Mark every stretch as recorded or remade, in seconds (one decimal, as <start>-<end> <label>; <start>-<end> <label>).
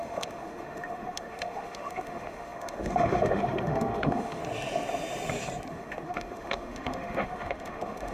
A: 0.0-4.4 remade; 4.4-5.7 recorded; 5.7-8.1 remade